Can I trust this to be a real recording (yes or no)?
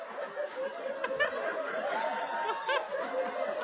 yes